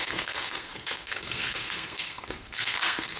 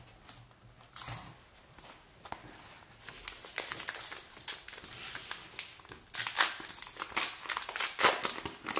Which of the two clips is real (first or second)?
second